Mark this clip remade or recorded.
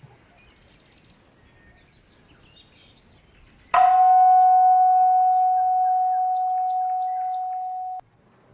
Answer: recorded